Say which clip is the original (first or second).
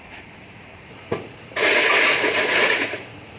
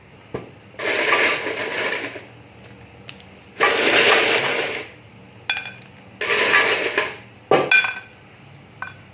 second